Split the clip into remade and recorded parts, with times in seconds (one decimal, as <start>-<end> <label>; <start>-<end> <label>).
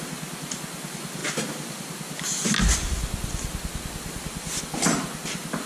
0.0-5.7 recorded